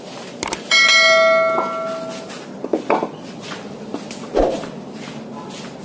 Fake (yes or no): no